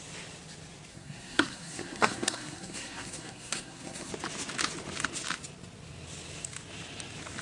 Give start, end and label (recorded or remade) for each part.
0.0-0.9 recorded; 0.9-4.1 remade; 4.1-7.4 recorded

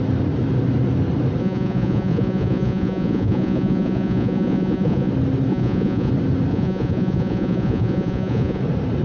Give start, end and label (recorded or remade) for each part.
0.0-1.4 recorded; 1.4-5.1 remade; 5.1-5.5 recorded; 5.5-6.1 remade; 6.1-6.5 recorded; 6.5-8.6 remade; 8.6-9.0 recorded